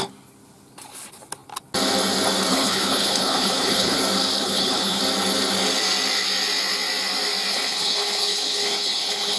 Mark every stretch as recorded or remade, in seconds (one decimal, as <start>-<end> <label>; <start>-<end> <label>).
0.0-2.5 recorded; 2.5-4.0 remade; 4.0-4.4 recorded; 4.4-5.0 remade; 5.0-7.5 recorded; 7.5-9.4 remade